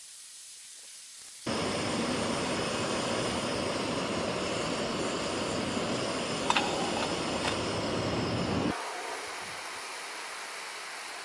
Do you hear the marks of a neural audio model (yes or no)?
no